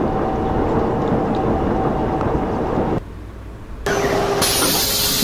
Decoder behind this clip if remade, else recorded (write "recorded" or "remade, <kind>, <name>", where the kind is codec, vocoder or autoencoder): recorded